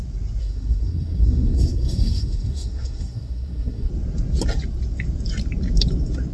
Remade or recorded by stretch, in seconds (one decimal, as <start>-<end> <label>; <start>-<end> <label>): 0.0-0.4 recorded; 0.4-3.9 remade; 3.9-6.3 recorded